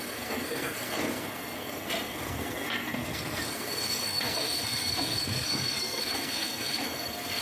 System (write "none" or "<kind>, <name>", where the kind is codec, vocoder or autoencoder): codec, SNAC